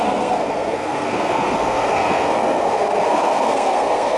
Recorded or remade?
remade